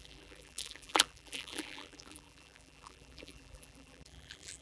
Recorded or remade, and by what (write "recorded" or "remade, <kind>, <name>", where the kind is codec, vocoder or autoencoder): remade, vocoder, BigVGAN v2